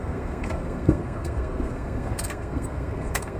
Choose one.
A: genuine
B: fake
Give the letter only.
B